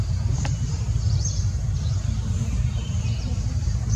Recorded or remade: remade